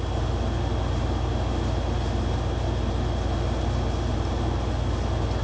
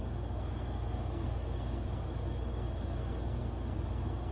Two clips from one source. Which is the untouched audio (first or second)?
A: first